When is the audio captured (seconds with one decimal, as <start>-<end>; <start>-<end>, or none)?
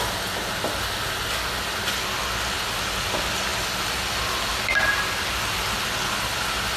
0.0-6.8